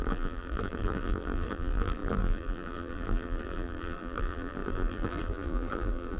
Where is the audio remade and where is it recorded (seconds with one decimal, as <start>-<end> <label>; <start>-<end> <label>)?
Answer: 0.0-6.2 remade